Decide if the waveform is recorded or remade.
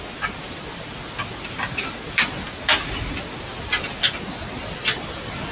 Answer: recorded